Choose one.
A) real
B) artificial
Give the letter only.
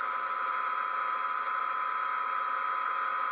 A